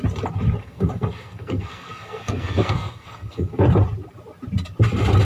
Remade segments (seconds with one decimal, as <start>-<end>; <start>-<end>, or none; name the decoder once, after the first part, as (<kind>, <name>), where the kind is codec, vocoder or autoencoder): 0.6-3.7 (codec, SNAC)